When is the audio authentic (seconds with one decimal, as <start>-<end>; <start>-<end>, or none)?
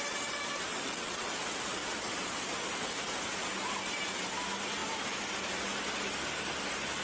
0.0-0.7; 1.3-7.0